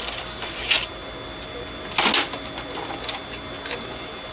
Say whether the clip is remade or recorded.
recorded